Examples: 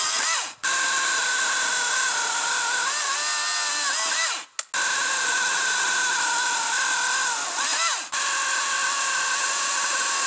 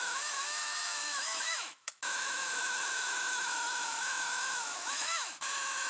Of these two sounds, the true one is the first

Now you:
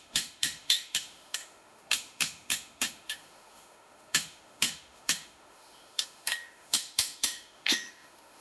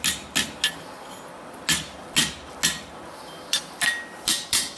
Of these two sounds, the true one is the second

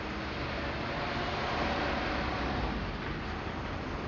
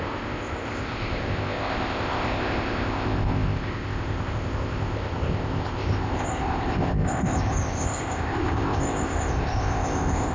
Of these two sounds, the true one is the first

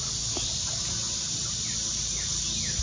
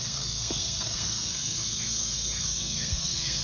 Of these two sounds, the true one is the first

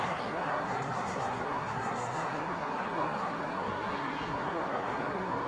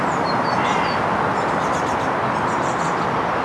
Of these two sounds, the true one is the second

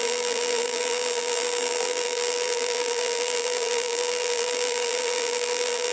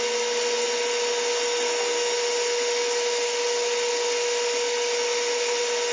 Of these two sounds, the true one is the second